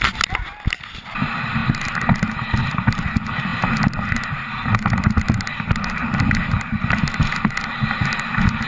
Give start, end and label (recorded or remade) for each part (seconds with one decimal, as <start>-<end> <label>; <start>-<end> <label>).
0.0-8.7 recorded